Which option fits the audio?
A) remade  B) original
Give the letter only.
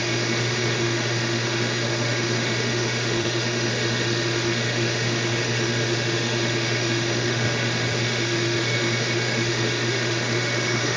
A